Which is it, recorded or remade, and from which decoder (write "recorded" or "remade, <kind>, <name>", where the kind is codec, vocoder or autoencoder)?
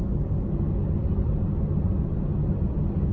recorded